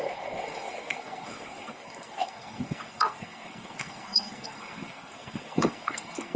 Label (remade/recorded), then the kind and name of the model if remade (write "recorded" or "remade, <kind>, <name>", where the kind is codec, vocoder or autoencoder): remade, codec, SNAC